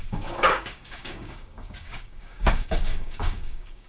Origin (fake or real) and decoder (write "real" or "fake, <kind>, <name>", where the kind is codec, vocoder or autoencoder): fake, codec, DAC